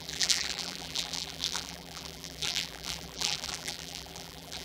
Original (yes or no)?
no